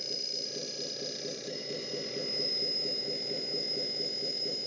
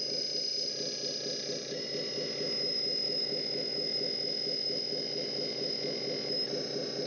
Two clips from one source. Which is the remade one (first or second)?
first